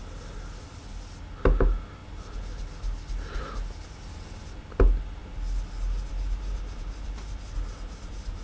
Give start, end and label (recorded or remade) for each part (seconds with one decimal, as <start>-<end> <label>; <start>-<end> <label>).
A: 0.0-8.4 recorded